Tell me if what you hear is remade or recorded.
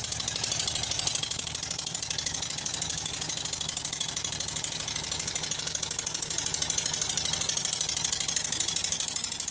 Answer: remade